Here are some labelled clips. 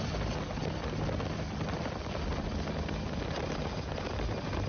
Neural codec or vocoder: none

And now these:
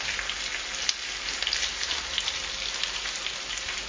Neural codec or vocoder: none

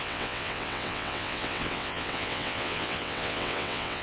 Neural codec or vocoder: vocoder, WaveNeXt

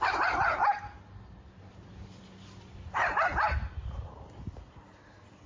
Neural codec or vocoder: none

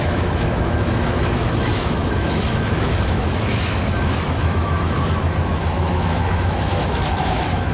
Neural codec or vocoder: autoencoder, DAC-VAE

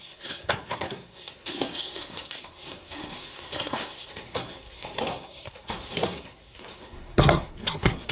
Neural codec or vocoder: codec, SNAC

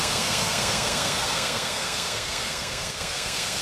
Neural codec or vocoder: codec, SNAC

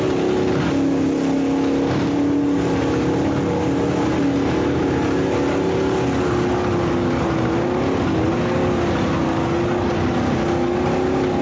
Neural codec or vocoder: none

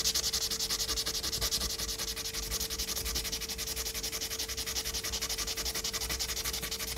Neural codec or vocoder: none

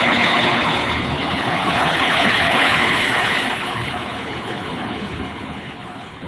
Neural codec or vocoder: codec, HILCodec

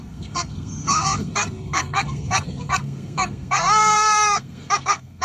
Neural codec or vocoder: codec, SNAC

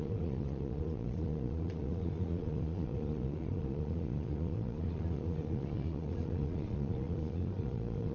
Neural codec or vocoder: vocoder, Vocos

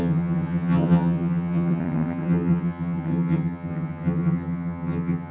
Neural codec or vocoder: vocoder, HiFi-GAN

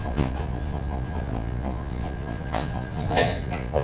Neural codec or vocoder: vocoder, Vocos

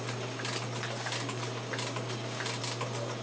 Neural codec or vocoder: none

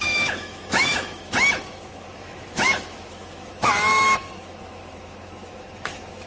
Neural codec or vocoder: autoencoder, DAC-VAE